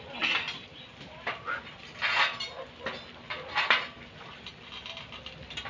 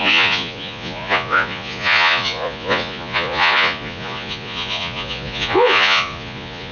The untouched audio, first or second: first